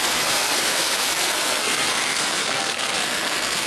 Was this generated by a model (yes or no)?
yes